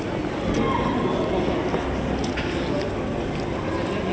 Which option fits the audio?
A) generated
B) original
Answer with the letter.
B